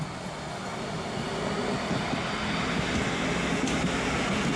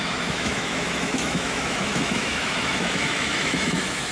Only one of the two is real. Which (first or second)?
first